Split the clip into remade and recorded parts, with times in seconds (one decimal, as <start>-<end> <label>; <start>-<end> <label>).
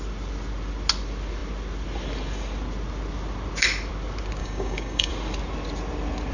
0.0-4.4 recorded; 4.4-5.1 remade; 5.1-6.3 recorded